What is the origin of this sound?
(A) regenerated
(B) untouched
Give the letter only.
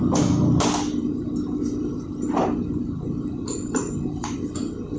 B